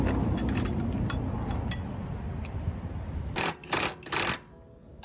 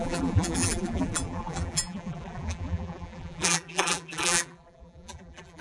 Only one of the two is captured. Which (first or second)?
first